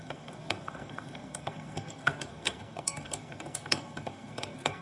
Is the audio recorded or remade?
remade